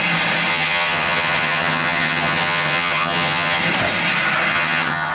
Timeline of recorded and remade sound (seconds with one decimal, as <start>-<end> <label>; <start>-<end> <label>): 0.0-0.5 recorded; 0.5-3.6 remade; 3.6-4.5 recorded; 4.5-5.1 remade